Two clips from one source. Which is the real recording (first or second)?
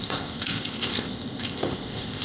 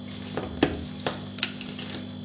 second